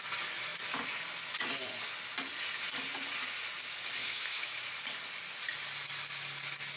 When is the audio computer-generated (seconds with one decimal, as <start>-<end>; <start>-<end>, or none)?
4.0-4.6